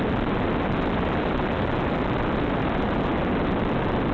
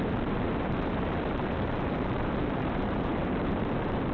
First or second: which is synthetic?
second